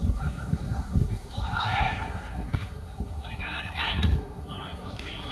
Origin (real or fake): fake